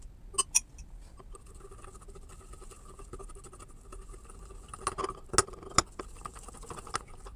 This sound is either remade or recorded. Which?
recorded